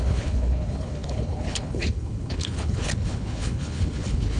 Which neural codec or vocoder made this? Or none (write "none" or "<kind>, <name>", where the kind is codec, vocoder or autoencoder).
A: codec, HILCodec